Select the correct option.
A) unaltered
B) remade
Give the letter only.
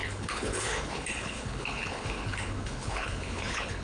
B